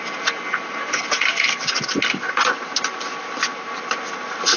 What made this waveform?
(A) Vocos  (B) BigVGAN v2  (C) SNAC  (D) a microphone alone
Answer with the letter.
D